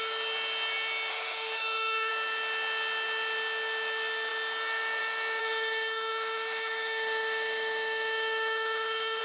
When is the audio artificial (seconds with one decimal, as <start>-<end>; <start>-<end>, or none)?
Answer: 1.1-2.1; 5.4-9.2